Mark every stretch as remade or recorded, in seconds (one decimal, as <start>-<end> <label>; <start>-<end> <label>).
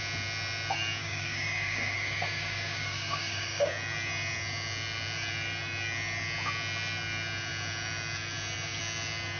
0.0-1.0 recorded; 1.0-3.7 remade; 3.7-9.4 recorded